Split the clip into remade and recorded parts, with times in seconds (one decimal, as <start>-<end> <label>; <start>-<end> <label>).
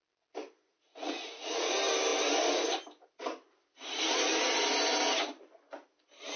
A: 0.0-0.7 recorded; 0.7-1.7 remade; 1.7-6.4 recorded